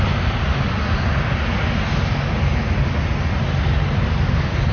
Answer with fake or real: real